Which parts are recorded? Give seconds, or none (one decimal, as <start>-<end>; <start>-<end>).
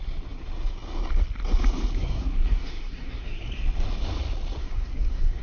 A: 0.0-2.0; 3.5-4.6